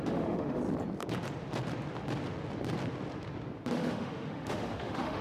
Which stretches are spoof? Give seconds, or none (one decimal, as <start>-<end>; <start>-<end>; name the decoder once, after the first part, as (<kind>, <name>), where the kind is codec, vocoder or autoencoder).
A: 0.0-0.6 (autoencoder, DAC-VAE); 3.7-5.2